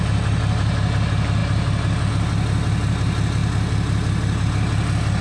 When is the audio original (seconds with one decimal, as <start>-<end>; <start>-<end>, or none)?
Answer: 0.0-5.2